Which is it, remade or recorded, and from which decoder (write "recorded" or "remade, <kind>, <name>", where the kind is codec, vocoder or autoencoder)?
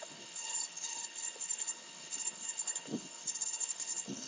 remade, codec, HILCodec